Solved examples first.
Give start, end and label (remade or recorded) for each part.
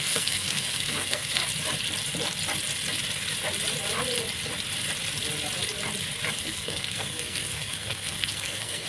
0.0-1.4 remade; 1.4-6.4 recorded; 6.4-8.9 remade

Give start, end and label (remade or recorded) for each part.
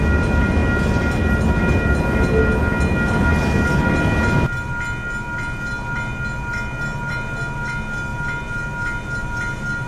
0.0-9.9 recorded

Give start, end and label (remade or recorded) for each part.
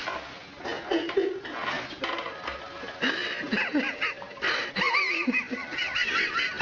0.0-3.7 recorded; 3.7-4.7 remade; 4.7-5.8 recorded; 5.8-6.6 remade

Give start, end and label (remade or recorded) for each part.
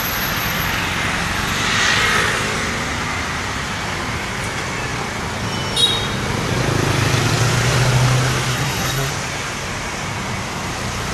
0.0-8.5 recorded; 8.5-9.1 remade; 9.1-11.1 recorded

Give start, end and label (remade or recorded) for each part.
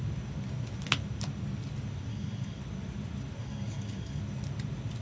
0.0-2.1 recorded; 2.1-2.6 remade; 2.6-3.4 recorded; 3.4-4.2 remade; 4.2-5.0 recorded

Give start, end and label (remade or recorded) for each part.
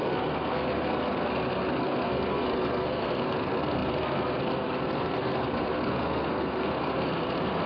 0.0-7.7 remade